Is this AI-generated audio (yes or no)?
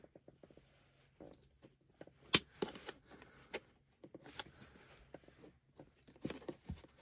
no